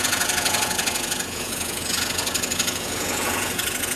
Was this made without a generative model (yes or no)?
no